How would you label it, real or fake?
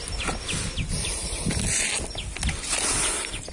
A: real